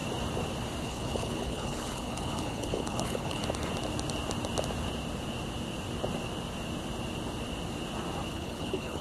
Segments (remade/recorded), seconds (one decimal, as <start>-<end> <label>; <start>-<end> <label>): 0.0-0.8 recorded; 0.8-3.4 remade; 3.4-8.3 recorded; 8.3-9.0 remade